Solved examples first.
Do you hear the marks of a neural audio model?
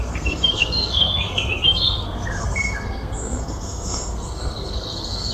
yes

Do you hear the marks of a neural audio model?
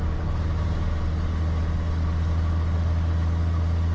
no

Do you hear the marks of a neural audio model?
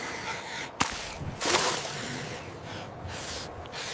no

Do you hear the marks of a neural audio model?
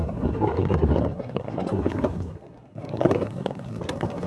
yes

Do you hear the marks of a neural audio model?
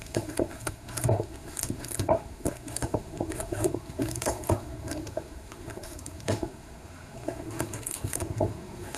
yes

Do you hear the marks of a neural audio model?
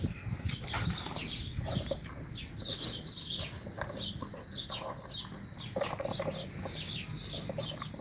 no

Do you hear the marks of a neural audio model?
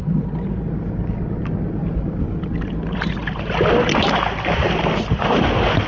no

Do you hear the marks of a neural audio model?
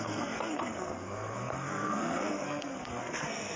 yes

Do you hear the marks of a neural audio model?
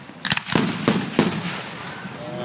no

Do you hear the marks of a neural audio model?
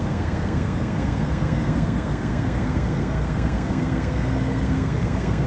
yes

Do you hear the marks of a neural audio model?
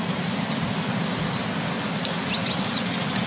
no